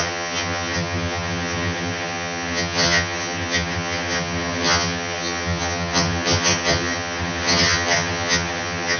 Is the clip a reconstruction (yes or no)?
yes